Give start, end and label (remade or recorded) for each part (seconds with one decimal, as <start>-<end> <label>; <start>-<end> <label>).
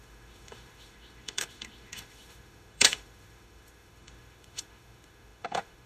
0.0-5.9 remade